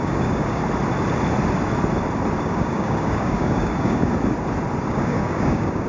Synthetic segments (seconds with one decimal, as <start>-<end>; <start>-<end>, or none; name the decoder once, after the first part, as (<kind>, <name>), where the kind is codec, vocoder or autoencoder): 0.0-0.6 (codec, DAC); 2.4-4.1; 4.8-5.9